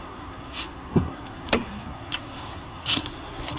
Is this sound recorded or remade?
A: remade